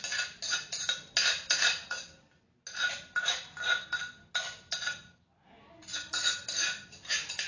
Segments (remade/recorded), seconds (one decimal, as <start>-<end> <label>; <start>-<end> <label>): 0.0-7.5 recorded